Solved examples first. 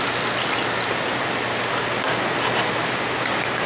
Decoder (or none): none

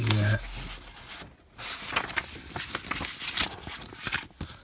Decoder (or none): none